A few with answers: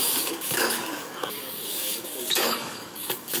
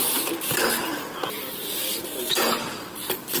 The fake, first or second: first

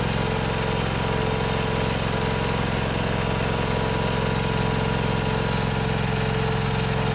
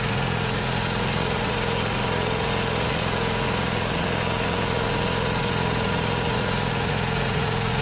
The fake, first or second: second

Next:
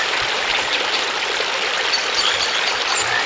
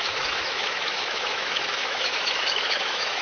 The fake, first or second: second